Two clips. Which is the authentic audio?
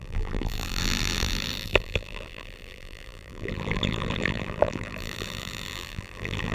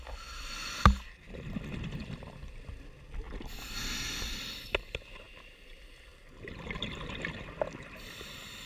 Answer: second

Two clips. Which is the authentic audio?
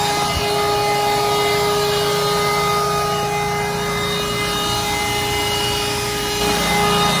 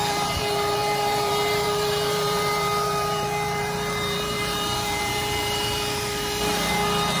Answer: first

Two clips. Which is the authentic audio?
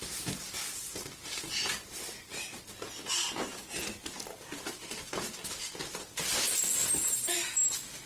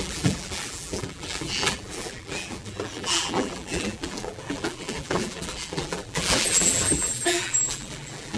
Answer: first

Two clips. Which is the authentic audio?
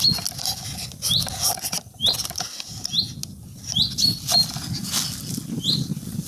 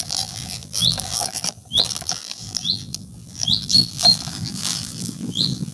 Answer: first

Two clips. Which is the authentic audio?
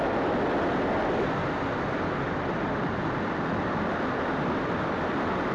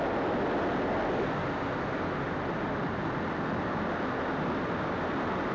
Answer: second